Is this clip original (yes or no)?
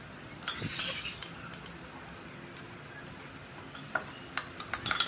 yes